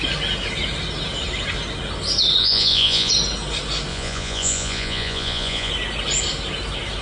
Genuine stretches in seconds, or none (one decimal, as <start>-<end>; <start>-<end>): 0.0-2.4; 3.1-3.9; 5.7-7.0